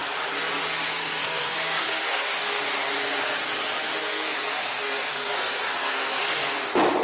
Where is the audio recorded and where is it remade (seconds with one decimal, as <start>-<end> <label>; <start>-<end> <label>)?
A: 0.0-1.0 recorded; 1.0-2.6 remade; 2.6-4.0 recorded; 4.0-6.6 remade; 6.6-7.0 recorded